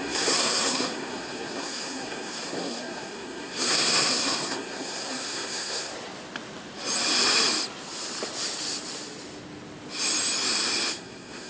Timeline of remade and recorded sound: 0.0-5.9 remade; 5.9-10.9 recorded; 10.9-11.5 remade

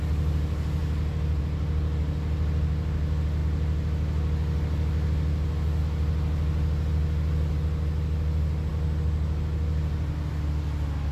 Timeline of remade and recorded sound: 0.0-11.1 recorded

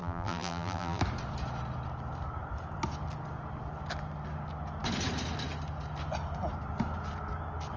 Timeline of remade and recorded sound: 0.0-1.0 remade; 1.0-7.8 recorded

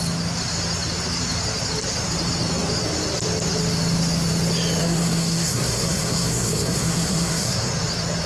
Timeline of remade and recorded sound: 0.0-4.8 recorded; 4.8-7.7 remade; 7.7-8.3 recorded

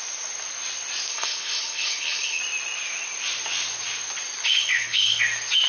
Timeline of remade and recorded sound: 0.0-1.1 recorded; 1.1-2.4 remade; 2.4-4.4 recorded; 4.4-5.2 remade; 5.2-5.7 recorded

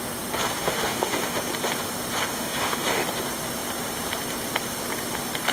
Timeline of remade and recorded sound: 0.0-0.6 recorded; 0.6-1.4 remade; 1.4-2.3 recorded; 2.3-3.0 remade; 3.0-5.5 recorded